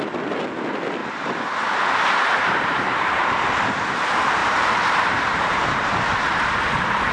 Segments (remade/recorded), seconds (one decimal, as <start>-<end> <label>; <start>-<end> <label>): 0.0-1.0 recorded; 1.0-3.2 remade; 3.2-4.4 recorded; 4.4-7.1 remade